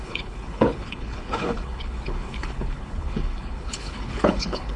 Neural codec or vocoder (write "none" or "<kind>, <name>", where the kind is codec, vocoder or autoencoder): codec, HILCodec